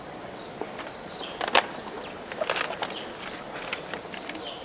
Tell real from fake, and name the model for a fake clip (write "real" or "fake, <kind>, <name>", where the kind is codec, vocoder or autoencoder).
real